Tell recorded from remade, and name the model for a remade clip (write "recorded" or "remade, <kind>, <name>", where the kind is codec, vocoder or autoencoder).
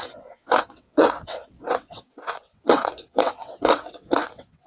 remade, vocoder, WaveNeXt